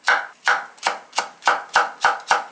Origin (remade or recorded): recorded